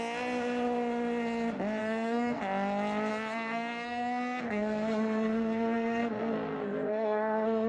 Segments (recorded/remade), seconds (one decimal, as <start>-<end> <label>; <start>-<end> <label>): 0.0-1.8 recorded; 1.8-2.4 remade; 2.4-3.1 recorded; 3.1-7.7 remade